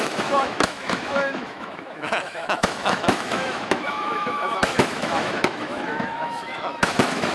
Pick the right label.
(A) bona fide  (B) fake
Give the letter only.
B